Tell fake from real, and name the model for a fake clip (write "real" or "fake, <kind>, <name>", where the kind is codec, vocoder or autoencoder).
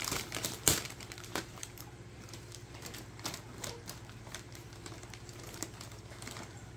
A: fake, vocoder, BigVGAN v2